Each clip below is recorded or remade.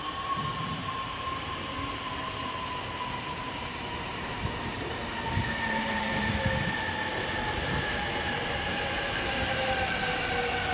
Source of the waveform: remade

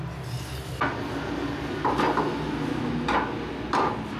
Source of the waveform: recorded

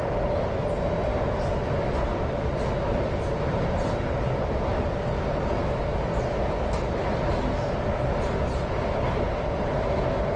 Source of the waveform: recorded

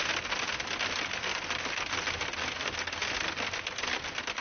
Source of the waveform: remade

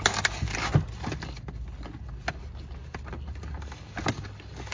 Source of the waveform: recorded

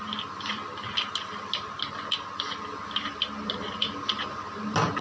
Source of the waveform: recorded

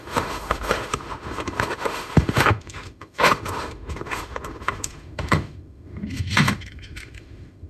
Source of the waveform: remade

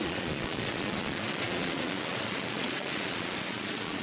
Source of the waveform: remade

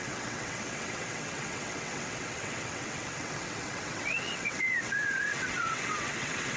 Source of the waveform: remade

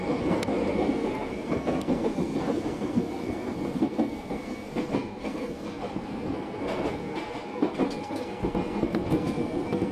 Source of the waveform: remade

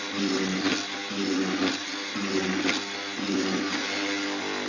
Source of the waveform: recorded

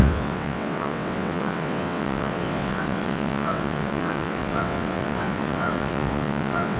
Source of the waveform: remade